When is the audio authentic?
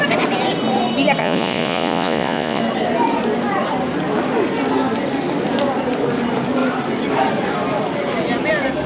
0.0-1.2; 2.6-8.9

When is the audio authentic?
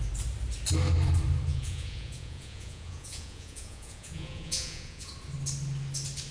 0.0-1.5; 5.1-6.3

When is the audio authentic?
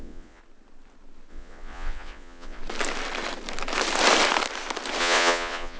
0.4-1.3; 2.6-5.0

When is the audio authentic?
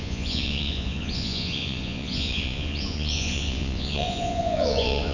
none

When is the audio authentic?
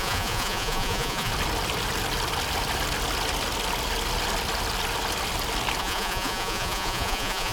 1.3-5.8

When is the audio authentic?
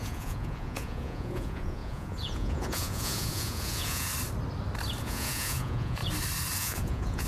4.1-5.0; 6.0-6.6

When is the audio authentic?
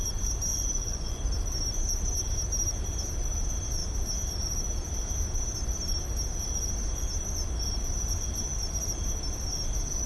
0.0-0.5; 1.2-10.1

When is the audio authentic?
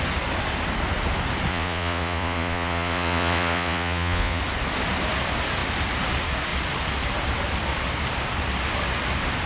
0.0-1.5; 4.4-9.5